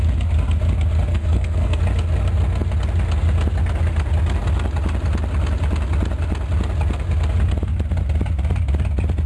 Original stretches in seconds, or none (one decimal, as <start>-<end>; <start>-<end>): 0.0-1.1; 1.8-9.3